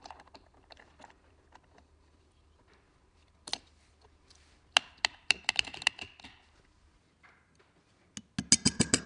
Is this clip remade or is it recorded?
recorded